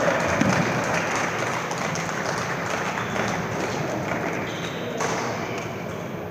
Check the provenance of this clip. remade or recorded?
recorded